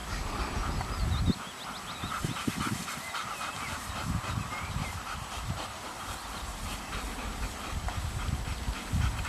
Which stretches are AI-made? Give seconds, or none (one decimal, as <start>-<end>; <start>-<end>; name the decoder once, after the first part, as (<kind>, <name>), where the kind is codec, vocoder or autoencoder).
4.8-6.9 (vocoder, BigVGAN v2)